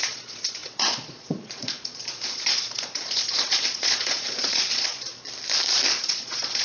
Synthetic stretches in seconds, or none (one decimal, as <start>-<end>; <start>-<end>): 0.0-5.1; 5.9-6.6